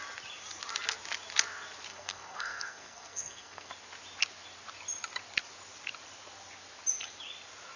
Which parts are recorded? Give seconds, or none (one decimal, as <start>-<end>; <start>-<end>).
0.0-1.9; 3.7-7.8